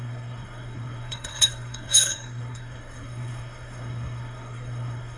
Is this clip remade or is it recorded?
remade